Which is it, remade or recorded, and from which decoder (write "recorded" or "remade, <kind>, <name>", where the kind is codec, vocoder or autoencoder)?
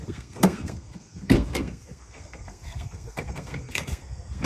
remade, codec, SNAC